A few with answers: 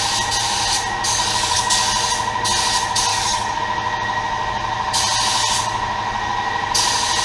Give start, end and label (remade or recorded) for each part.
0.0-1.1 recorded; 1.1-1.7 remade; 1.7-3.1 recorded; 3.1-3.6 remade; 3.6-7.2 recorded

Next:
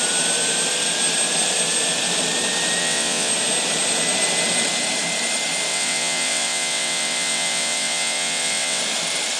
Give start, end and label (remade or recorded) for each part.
0.0-2.8 recorded; 2.8-3.3 remade; 3.3-5.7 recorded; 5.7-8.8 remade; 8.8-9.4 recorded

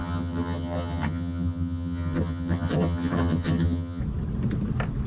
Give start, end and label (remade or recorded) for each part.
0.0-4.0 remade; 4.0-5.1 recorded

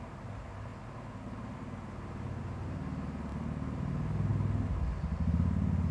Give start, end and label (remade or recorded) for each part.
0.0-5.9 recorded

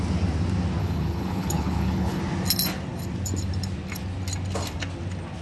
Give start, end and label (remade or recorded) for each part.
0.0-0.8 recorded; 0.8-2.2 remade; 2.2-5.4 recorded

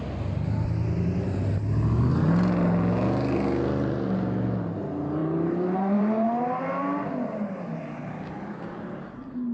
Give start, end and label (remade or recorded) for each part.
0.0-5.2 recorded; 5.2-6.6 remade; 6.6-9.5 recorded